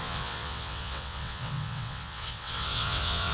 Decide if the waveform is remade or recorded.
remade